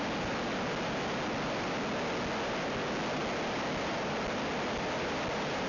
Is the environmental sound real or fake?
real